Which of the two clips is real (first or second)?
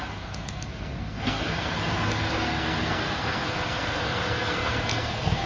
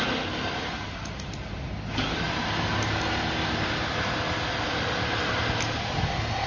second